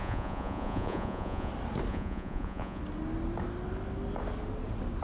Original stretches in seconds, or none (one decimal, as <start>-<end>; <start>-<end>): 1.5-1.9; 2.8-5.0